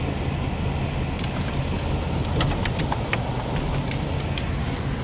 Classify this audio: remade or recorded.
recorded